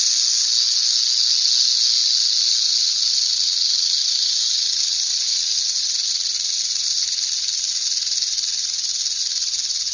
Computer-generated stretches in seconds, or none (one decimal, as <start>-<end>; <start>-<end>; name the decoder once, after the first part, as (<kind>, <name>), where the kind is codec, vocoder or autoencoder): none